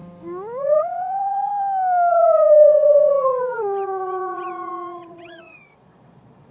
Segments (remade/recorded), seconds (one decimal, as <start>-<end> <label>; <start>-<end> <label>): 0.0-0.6 recorded; 0.6-1.5 remade; 1.5-2.1 recorded; 2.1-6.5 remade